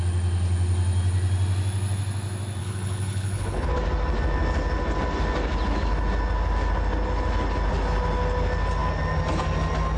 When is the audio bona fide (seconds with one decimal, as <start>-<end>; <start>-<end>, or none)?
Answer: 0.0-2.6; 3.7-10.0